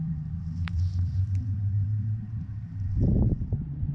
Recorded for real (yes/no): no